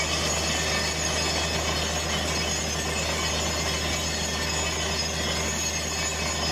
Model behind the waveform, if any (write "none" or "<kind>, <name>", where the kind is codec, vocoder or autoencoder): none